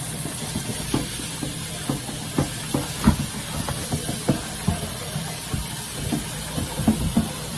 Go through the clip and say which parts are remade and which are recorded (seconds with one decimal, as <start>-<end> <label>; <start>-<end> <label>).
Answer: 0.0-1.7 remade; 1.7-4.9 recorded; 4.9-7.6 remade